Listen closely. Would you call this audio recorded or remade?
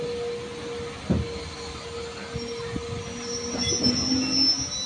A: recorded